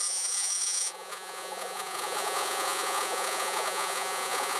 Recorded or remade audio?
remade